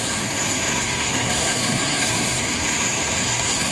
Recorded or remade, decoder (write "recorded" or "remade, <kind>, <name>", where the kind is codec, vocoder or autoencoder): remade, codec, SNAC